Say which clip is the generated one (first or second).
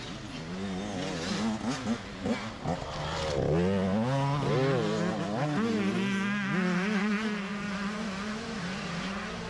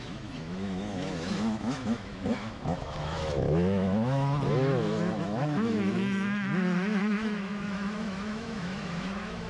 second